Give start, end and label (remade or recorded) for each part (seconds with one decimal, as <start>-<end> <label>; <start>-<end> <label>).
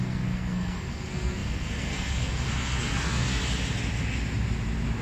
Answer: 0.0-3.4 remade; 3.4-5.0 recorded